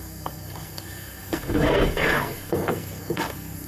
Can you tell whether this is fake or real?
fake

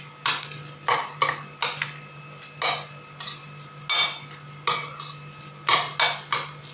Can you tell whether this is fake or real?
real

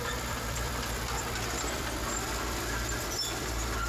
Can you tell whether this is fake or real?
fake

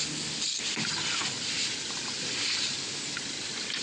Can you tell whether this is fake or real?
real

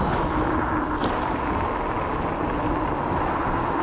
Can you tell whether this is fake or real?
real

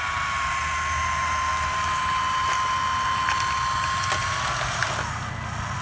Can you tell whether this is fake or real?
real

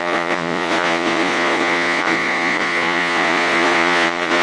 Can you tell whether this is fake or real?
fake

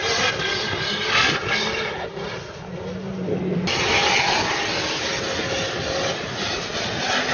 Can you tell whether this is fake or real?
real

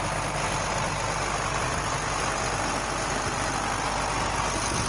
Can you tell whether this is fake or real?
real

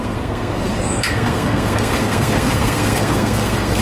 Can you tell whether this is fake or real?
fake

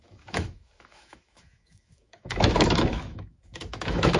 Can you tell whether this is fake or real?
fake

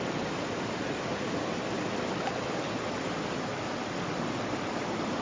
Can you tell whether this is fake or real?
real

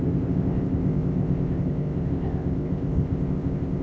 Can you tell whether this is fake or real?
fake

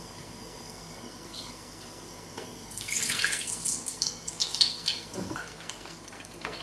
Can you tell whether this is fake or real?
fake